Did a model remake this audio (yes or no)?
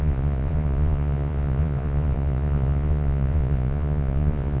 yes